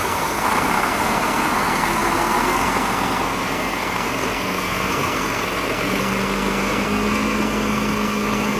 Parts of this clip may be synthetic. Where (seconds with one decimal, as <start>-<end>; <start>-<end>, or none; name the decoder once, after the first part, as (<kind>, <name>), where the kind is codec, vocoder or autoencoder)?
0.0-8.6 (codec, SNAC)